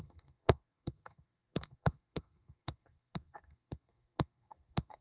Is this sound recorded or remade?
remade